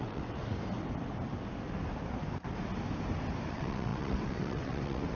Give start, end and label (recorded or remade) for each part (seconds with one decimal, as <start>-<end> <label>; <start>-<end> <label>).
0.0-0.4 remade; 0.4-3.5 recorded; 3.5-5.2 remade